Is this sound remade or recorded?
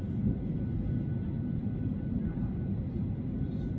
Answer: recorded